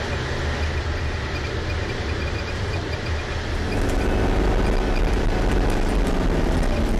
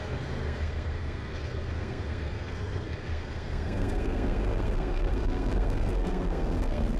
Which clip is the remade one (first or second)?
second